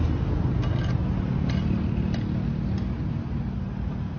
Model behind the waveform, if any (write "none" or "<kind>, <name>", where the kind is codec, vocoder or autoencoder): none